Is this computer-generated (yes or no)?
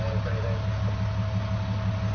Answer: no